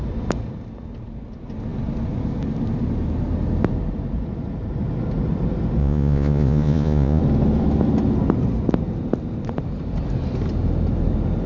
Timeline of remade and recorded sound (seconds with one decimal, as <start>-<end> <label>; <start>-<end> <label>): 0.0-5.8 recorded; 5.8-7.2 remade; 7.2-11.5 recorded